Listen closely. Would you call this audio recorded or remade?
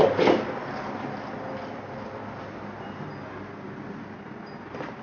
recorded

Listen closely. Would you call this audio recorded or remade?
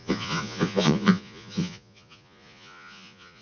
remade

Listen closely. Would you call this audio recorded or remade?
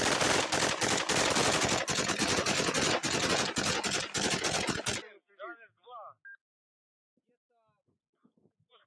recorded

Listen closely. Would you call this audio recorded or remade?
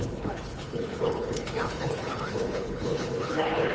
remade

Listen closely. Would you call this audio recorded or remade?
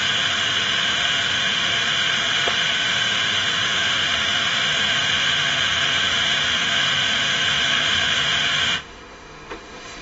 remade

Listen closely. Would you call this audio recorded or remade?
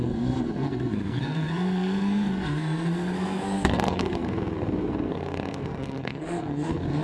remade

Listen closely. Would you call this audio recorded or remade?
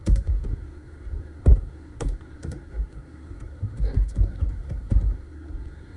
remade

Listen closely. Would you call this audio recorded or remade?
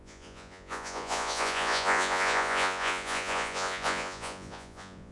remade